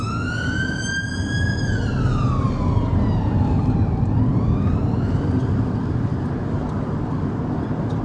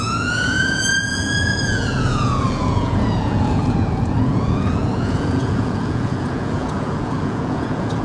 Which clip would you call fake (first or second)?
second